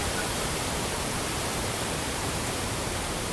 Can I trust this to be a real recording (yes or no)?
no